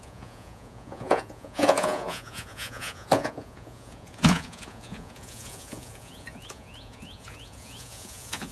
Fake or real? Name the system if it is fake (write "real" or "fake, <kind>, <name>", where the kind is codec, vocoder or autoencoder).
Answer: fake, vocoder, Vocos